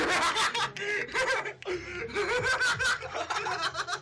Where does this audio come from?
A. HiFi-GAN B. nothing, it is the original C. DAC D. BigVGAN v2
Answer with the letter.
B